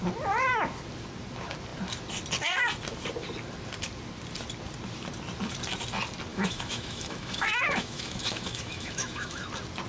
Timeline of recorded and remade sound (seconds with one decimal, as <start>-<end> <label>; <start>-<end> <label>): 0.0-6.3 recorded; 6.3-9.5 remade; 9.5-9.9 recorded